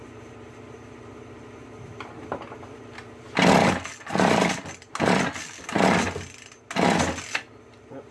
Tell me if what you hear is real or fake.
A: real